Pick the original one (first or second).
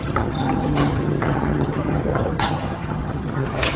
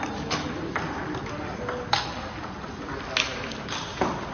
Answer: second